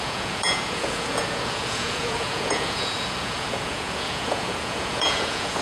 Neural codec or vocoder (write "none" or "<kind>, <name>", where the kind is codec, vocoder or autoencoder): vocoder, Vocos